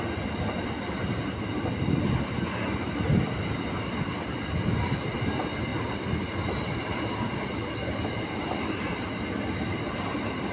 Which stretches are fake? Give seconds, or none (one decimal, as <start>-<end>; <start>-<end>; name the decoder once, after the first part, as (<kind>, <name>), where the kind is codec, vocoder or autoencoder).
4.1-5.0 (vocoder, BigVGAN v2); 5.7-6.3